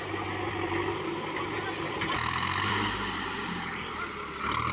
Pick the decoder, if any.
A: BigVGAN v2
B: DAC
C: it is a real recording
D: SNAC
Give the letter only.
A